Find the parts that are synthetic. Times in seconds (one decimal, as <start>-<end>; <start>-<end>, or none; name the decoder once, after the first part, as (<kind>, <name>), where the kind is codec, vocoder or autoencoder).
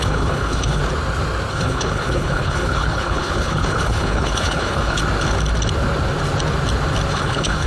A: 0.0-0.8 (codec, HILCodec); 1.5-5.0; 7.1-7.7